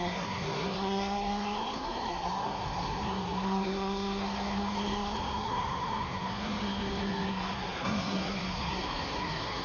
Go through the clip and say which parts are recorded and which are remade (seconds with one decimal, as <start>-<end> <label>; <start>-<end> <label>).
0.0-9.6 remade